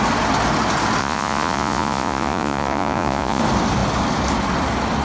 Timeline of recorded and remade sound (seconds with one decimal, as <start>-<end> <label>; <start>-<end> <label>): 0.0-1.0 recorded; 1.0-3.4 remade; 3.4-5.0 recorded